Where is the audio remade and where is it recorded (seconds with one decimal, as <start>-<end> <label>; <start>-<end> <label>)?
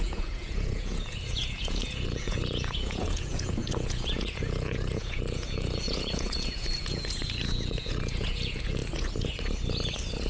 0.0-8.8 remade; 8.8-10.3 recorded